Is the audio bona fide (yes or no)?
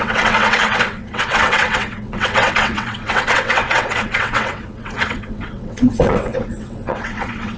no